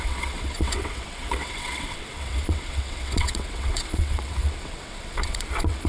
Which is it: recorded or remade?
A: remade